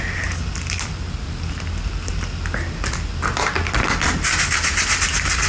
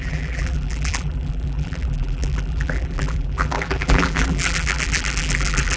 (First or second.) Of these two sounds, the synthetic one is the second